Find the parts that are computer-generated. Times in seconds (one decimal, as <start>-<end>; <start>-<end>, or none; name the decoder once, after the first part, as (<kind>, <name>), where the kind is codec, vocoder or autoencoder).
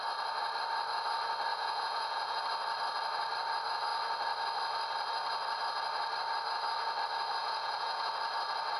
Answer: 1.5-2.4 (vocoder, Vocos); 7.4-8.1